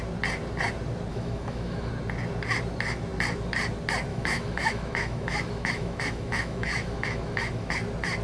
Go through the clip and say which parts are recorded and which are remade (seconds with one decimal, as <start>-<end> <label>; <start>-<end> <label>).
0.0-1.1 recorded; 1.1-1.9 remade; 1.9-4.1 recorded; 4.1-7.7 remade; 7.7-8.2 recorded